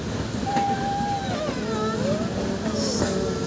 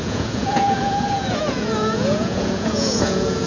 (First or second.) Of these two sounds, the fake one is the second